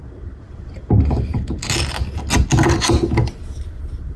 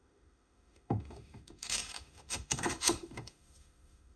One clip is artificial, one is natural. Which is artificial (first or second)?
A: second